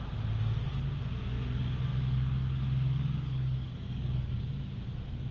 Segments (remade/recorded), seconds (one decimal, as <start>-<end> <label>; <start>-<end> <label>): 0.0-1.9 recorded; 1.9-4.4 remade; 4.4-5.3 recorded